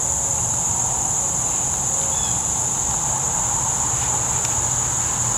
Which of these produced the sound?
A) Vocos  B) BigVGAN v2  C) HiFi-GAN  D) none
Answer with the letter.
D